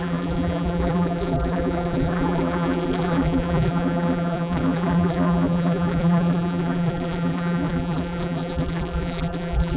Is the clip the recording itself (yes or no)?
no